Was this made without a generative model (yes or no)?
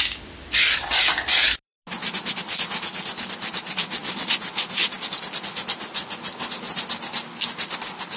yes